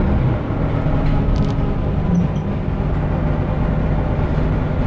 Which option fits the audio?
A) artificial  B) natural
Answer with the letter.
B